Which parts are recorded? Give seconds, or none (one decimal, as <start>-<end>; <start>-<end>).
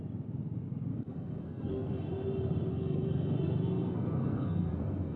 0.0-0.9; 2.1-2.7